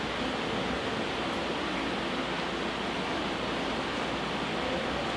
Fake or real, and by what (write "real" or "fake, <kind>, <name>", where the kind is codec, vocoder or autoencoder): real